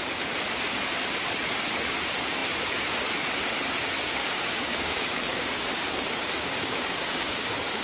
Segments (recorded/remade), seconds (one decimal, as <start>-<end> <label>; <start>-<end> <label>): 0.0-4.2 recorded; 4.2-7.8 remade